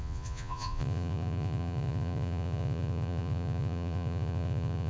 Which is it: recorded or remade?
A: remade